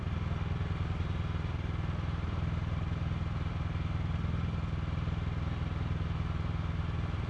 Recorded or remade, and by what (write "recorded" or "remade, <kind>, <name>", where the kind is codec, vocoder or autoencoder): recorded